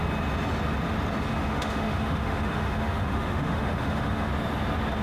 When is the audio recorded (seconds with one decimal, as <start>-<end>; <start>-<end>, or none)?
0.0-1.3; 4.3-5.0